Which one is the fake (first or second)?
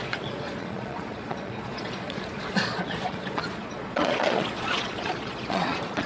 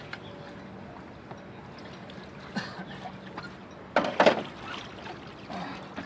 first